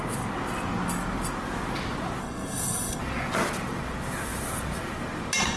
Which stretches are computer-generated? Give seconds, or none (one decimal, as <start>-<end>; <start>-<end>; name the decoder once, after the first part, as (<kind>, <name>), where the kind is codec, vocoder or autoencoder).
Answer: 2.2-3.0 (codec, SNAC)